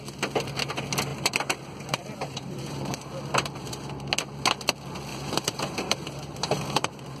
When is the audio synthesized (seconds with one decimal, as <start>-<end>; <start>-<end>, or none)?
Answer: 1.1-3.7; 5.1-7.2